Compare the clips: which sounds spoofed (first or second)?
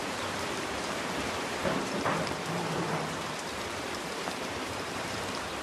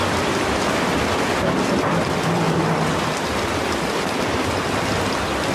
first